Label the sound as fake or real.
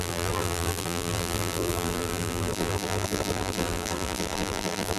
fake